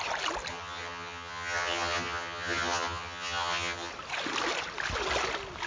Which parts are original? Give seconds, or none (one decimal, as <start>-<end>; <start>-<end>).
0.0-0.5; 3.9-5.7